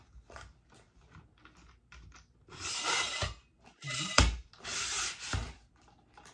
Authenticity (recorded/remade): recorded